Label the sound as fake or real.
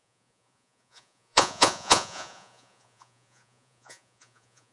fake